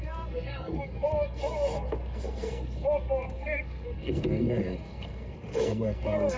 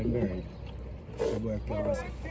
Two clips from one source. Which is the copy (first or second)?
first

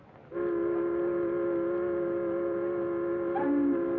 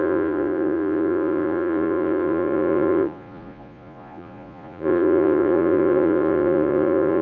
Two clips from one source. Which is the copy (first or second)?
second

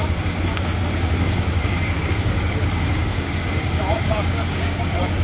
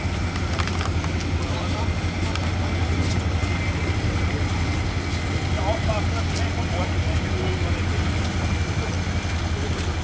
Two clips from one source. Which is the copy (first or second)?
first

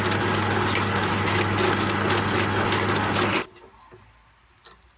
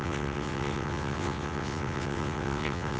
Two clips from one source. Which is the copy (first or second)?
second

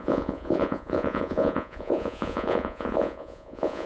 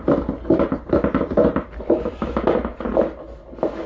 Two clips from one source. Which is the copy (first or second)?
first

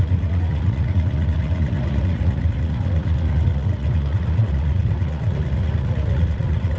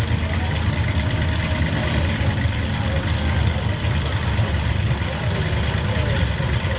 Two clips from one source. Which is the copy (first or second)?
first